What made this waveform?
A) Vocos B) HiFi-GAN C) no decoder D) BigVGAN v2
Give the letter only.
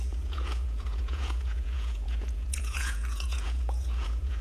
A